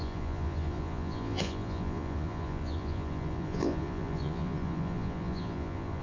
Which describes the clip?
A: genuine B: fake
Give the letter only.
B